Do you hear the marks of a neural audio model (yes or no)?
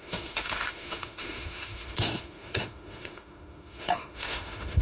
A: yes